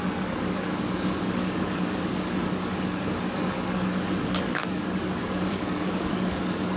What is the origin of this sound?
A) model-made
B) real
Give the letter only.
A